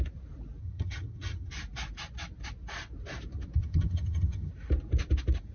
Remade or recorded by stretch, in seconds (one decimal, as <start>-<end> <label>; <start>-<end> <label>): 0.0-0.6 recorded; 0.6-1.5 remade; 1.5-3.6 recorded; 3.6-4.5 remade; 4.5-5.5 recorded